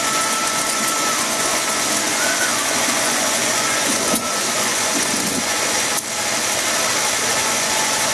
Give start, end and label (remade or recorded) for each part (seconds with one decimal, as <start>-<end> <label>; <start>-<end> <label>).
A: 0.0-5.9 remade; 5.9-7.3 recorded; 7.3-8.1 remade